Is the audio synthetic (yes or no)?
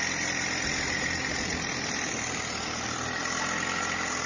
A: no